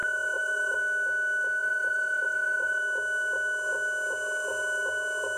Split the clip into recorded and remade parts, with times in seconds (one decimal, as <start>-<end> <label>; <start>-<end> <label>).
0.0-0.8 remade; 0.8-1.6 recorded; 1.6-2.8 remade; 2.8-5.4 recorded